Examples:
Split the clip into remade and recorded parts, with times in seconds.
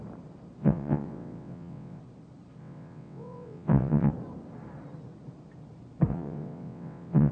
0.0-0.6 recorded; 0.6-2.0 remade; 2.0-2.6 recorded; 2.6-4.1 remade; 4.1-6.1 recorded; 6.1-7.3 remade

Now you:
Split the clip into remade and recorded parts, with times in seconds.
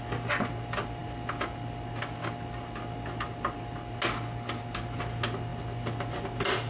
0.0-6.7 recorded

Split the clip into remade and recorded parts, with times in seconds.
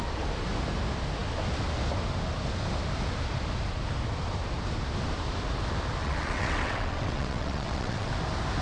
0.0-6.0 recorded; 6.0-8.1 remade; 8.1-8.6 recorded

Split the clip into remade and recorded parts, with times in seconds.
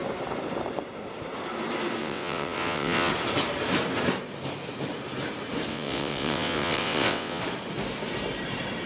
0.0-2.0 recorded; 2.0-3.1 remade; 3.1-5.7 recorded; 5.7-7.4 remade; 7.4-8.9 recorded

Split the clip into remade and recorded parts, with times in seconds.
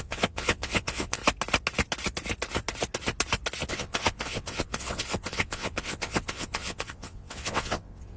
0.0-1.2 remade; 1.2-3.7 recorded; 3.7-8.2 remade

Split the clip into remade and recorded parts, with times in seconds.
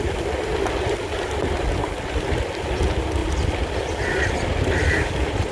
0.0-5.5 recorded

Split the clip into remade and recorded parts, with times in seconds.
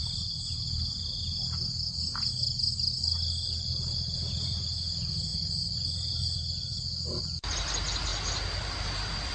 0.0-9.3 recorded